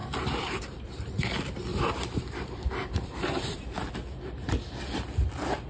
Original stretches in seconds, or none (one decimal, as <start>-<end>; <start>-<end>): 1.1-1.7; 3.9-5.7